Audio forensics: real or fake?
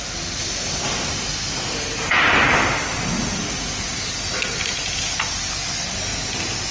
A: real